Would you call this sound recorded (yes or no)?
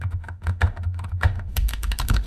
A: no